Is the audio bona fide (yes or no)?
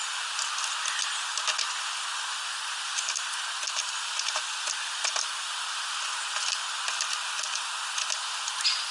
yes